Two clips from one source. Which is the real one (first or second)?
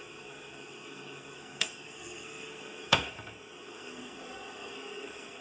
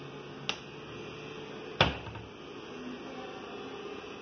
second